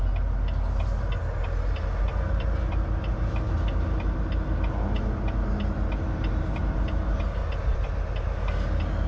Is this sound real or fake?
real